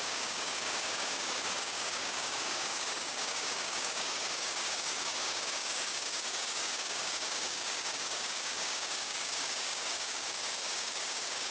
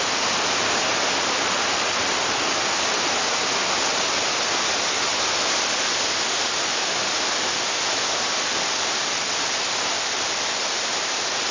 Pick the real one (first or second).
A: second